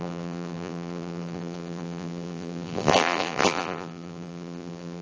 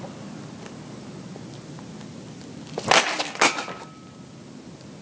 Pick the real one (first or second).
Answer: second